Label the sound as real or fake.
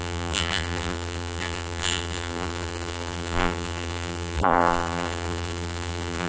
fake